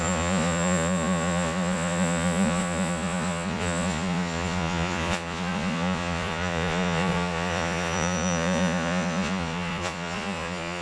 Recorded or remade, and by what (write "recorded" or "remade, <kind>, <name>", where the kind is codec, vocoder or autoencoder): remade, vocoder, Vocos